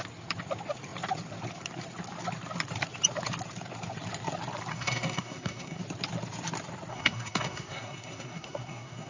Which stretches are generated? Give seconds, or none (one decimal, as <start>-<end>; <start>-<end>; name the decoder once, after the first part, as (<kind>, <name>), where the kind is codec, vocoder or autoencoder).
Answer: 4.7-5.8 (codec, SNAC); 6.9-9.1